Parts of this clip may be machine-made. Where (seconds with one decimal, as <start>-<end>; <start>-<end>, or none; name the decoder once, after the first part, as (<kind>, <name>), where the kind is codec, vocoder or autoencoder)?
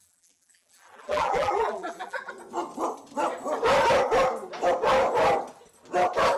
0.0-2.3 (vocoder, BigVGAN v2)